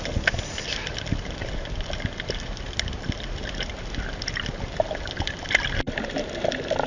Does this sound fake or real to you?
real